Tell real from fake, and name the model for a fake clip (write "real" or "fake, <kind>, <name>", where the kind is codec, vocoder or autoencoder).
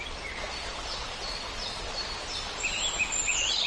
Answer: real